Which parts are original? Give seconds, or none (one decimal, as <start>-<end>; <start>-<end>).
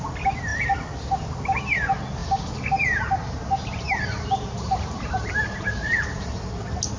0.0-2.2; 6.4-7.0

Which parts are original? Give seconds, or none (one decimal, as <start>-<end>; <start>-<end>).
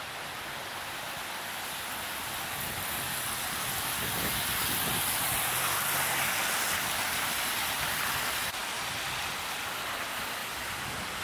0.0-11.2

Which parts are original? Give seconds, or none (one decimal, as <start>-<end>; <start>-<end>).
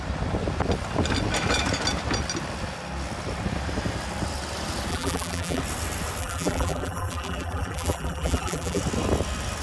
0.0-4.9; 5.6-6.2; 8.8-9.6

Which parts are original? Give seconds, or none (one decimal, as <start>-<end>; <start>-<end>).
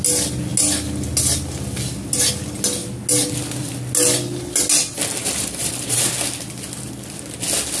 0.0-5.2; 6.0-7.8